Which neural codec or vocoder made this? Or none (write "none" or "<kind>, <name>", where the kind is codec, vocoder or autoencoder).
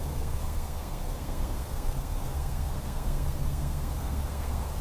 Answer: codec, SNAC